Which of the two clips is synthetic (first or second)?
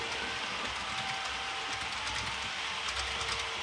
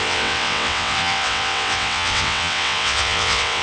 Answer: second